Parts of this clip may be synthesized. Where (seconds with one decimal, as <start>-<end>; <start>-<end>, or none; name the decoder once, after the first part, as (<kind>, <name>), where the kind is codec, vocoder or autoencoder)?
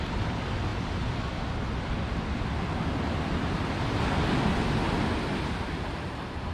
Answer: none